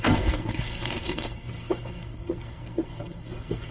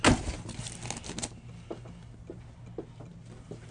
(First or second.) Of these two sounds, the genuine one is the second